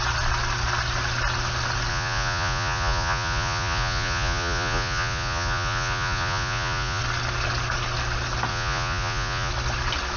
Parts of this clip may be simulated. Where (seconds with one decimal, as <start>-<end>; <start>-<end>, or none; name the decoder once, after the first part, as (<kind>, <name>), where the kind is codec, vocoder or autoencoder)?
1.9-7.0 (vocoder, Vocos); 8.5-9.5